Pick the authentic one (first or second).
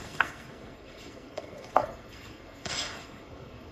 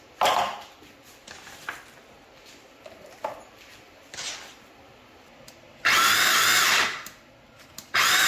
second